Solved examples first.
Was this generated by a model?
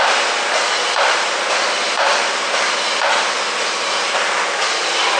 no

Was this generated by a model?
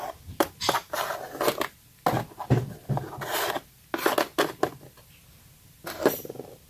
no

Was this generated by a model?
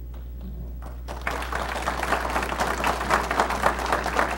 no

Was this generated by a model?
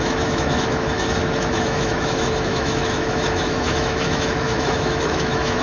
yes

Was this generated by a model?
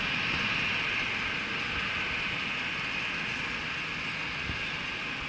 no